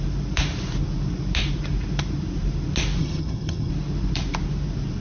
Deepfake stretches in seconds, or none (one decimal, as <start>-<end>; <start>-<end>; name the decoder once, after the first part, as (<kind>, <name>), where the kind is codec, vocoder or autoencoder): 3.0-3.7 (vocoder, HiFi-GAN)